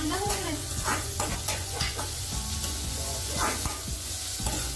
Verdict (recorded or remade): remade